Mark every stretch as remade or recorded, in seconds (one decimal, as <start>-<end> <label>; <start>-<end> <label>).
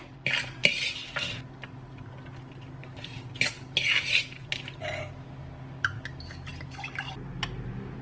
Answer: 0.0-8.0 recorded